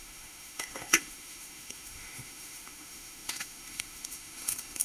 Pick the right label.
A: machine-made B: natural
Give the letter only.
A